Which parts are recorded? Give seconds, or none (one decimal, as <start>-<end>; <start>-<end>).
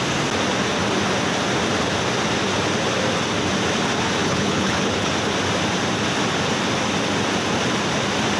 0.0-4.2; 5.1-8.4